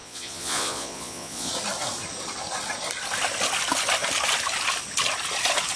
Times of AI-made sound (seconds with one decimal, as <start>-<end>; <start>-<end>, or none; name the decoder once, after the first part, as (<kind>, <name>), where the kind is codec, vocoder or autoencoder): 0.0-1.5 (vocoder, Vocos)